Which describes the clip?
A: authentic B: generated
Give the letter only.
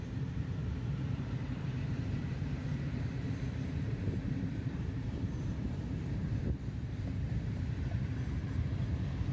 B